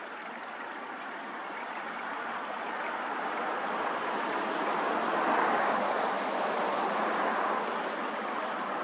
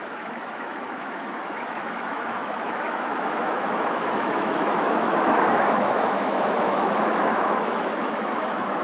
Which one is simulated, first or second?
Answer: second